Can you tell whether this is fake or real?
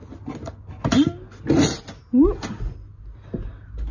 real